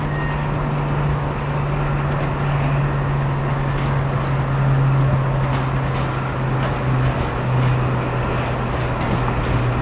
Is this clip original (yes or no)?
yes